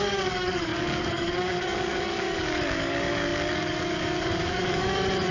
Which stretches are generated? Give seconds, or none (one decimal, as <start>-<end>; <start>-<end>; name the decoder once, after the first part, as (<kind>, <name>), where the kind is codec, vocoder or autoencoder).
0.0-5.3 (codec, DAC)